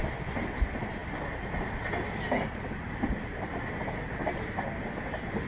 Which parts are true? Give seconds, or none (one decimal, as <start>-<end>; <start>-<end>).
0.0-5.5